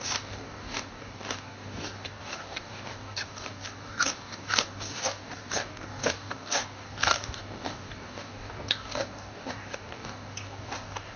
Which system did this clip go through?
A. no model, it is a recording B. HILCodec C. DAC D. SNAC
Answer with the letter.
C